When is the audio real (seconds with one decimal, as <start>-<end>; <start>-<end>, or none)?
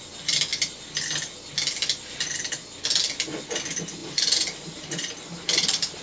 0.0-4.0